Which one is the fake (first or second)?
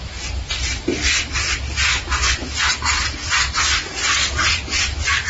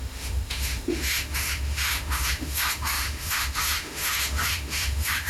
second